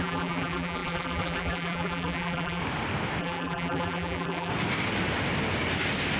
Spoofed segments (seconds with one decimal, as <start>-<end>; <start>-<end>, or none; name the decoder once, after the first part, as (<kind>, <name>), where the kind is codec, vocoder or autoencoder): 0.0-2.6 (vocoder, BigVGAN v2); 3.2-4.5